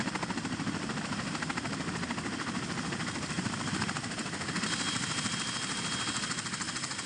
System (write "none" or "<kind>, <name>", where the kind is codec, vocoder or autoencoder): vocoder, BigVGAN v2